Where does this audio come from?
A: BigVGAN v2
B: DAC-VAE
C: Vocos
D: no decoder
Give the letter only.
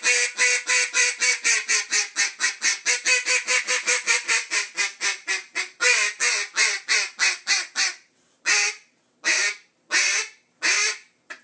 D